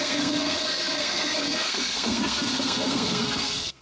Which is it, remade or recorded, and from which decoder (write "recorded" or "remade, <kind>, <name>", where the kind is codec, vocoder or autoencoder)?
remade, codec, SNAC